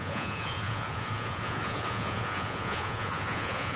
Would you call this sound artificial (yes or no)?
yes